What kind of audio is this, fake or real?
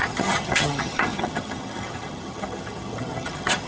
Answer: fake